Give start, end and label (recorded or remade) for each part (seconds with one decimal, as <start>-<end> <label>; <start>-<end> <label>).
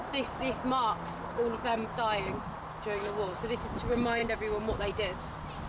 0.0-5.7 recorded